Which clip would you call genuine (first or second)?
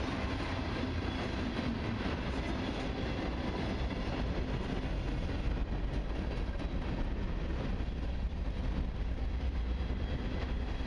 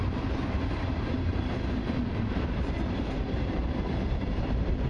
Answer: first